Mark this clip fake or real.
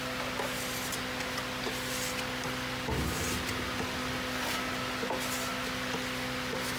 real